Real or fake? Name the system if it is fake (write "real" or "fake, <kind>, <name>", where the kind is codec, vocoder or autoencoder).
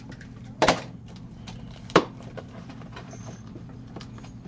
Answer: fake, vocoder, BigVGAN v2